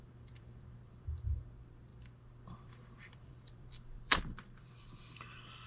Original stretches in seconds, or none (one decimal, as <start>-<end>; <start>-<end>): none